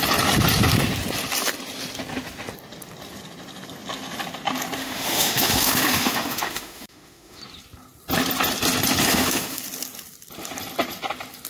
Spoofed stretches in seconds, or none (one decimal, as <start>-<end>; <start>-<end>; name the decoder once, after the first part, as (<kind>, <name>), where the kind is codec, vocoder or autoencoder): 4.8-7.4 (autoencoder, DAC-VAE); 9.1-9.6